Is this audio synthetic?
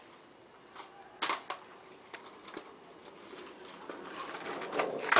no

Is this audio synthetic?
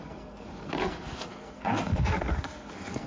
yes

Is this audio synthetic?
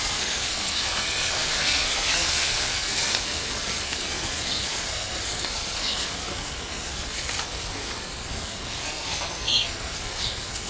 yes